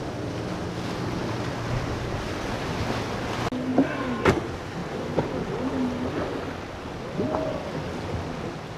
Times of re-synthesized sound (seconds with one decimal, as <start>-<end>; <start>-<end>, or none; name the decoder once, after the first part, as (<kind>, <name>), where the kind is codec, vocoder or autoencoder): none